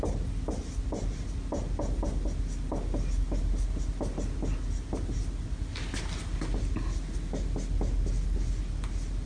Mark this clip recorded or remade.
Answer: recorded